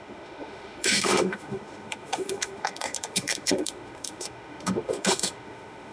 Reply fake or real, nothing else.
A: fake